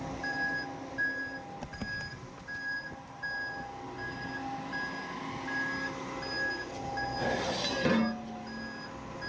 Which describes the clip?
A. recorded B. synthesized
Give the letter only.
A